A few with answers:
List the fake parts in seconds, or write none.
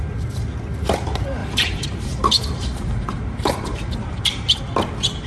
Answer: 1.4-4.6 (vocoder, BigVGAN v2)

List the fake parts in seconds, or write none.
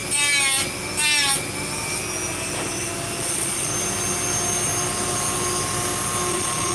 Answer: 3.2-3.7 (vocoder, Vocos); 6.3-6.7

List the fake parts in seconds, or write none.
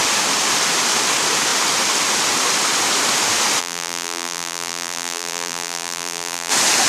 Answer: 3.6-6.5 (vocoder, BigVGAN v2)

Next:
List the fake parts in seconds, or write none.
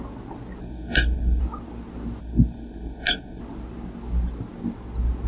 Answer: 0.6-1.4 (codec, SNAC); 2.2-3.4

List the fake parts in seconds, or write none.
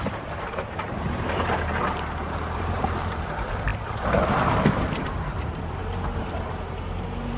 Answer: 0.0-7.4 (vocoder, BigVGAN v2)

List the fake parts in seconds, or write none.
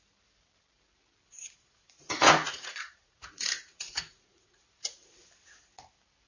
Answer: 1.3-5.1 (vocoder, Vocos)